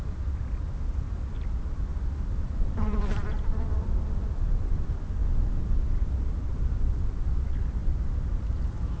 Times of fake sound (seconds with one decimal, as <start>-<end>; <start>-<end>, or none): 0.0-5.2; 6.1-9.0